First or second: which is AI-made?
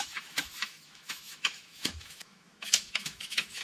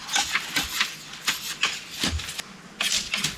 first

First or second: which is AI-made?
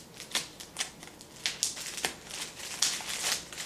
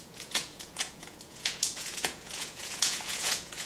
second